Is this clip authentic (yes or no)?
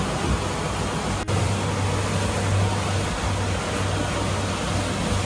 yes